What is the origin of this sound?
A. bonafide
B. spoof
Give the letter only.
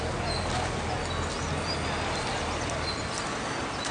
A